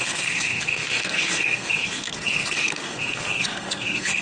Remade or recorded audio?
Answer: remade